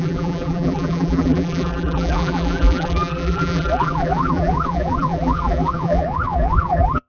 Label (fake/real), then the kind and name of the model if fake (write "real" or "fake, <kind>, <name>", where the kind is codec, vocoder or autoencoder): fake, vocoder, BigVGAN v2